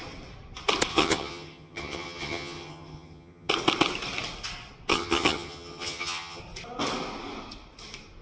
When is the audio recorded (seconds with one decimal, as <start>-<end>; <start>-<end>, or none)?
0.0-0.9; 3.5-4.9; 6.4-8.2

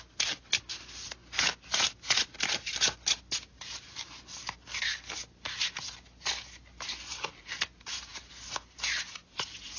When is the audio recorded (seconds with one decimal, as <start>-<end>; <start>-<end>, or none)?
0.0-9.8

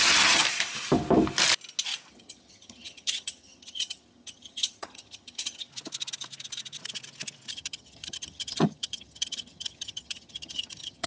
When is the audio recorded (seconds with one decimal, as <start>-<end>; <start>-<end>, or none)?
0.4-2.1; 5.7-7.5

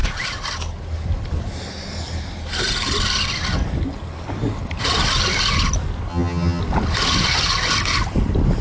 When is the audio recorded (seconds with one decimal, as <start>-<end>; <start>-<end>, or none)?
0.0-6.1; 6.6-8.6